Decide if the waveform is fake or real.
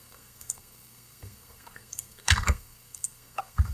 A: fake